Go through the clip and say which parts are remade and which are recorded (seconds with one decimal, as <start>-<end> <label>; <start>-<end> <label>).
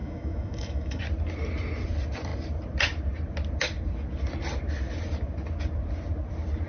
0.0-1.0 remade; 1.0-6.7 recorded